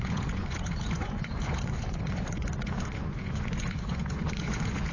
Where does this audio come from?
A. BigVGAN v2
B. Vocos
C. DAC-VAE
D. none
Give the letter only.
B